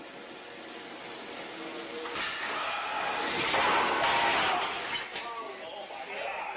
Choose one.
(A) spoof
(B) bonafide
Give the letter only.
B